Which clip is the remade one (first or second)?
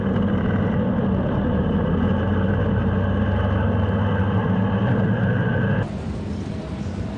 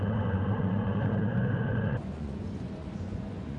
second